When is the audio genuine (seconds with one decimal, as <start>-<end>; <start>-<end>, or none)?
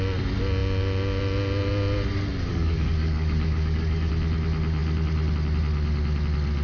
0.0-2.5; 4.1-6.6